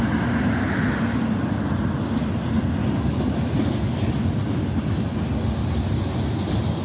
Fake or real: real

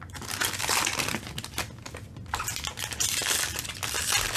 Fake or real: real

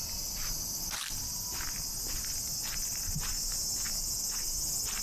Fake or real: real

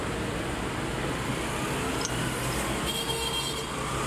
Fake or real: real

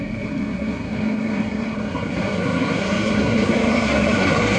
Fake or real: fake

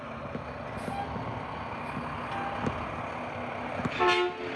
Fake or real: real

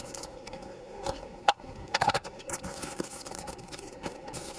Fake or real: fake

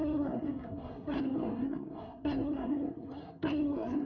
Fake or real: fake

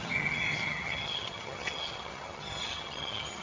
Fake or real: fake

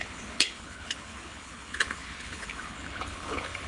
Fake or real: fake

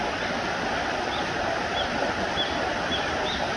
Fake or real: real